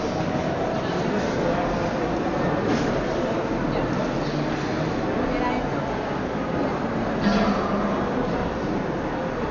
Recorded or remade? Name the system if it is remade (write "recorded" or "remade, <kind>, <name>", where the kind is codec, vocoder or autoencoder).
recorded